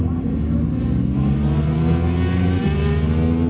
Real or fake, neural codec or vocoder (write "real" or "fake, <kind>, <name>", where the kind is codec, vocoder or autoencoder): real